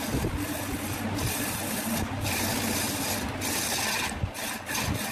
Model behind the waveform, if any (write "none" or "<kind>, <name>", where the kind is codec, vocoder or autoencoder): none